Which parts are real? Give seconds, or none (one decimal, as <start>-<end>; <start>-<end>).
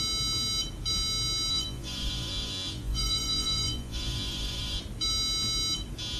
0.0-1.5; 4.8-6.2